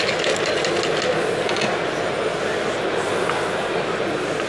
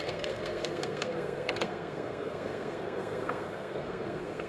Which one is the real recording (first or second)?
first